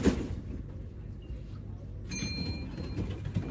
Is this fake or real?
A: real